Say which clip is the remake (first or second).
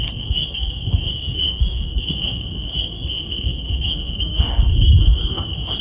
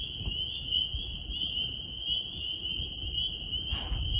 first